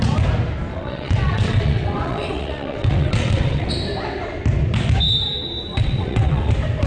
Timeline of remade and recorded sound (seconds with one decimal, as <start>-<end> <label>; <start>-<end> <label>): 0.0-0.7 recorded; 0.7-3.7 remade; 3.7-5.7 recorded; 5.7-6.5 remade; 6.5-6.9 recorded